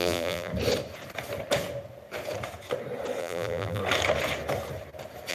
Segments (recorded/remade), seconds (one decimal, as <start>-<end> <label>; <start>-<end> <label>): 0.0-0.5 remade; 0.5-3.2 recorded; 3.2-3.8 remade; 3.8-5.3 recorded